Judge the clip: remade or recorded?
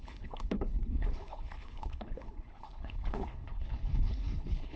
remade